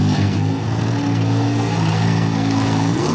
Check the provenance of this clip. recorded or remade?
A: remade